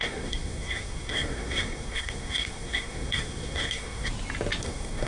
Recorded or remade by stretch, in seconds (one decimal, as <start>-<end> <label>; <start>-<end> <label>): 0.0-4.1 remade; 4.1-4.6 recorded; 4.6-5.1 remade